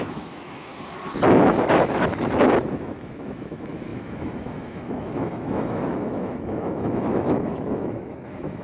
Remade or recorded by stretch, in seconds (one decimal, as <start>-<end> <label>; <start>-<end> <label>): 0.0-0.7 remade; 0.7-1.7 recorded; 1.7-2.1 remade; 2.1-2.7 recorded; 2.7-8.6 remade